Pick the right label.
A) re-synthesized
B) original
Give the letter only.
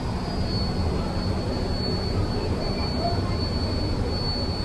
B